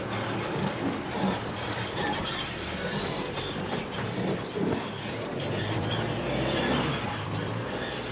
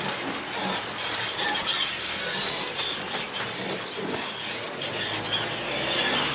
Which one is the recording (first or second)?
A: second